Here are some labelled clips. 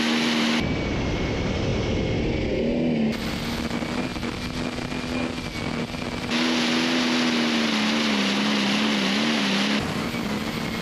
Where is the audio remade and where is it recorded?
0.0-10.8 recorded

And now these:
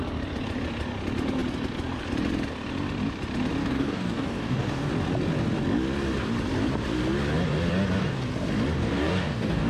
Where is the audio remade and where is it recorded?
0.0-3.6 recorded; 3.6-4.9 remade; 4.9-8.8 recorded; 8.8-9.7 remade

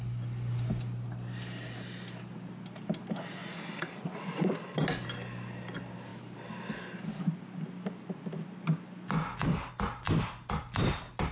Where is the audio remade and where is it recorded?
0.0-3.4 recorded; 3.4-4.5 remade; 4.5-11.3 recorded

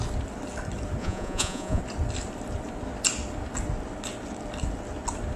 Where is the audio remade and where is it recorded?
0.0-1.0 recorded; 1.0-1.8 remade; 1.8-5.4 recorded

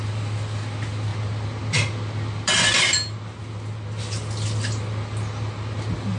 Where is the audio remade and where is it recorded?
0.0-6.2 recorded